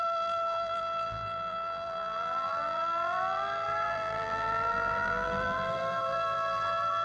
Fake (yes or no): yes